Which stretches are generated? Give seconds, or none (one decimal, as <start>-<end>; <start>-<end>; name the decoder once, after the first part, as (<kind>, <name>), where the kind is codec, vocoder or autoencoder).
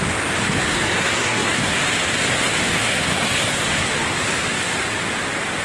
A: 0.7-1.8 (codec, SNAC); 2.8-3.9